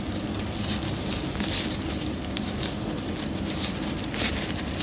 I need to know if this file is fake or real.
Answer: real